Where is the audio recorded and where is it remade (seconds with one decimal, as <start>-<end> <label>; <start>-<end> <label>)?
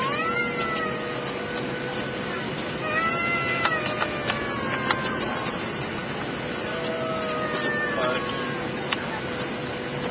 0.0-10.1 recorded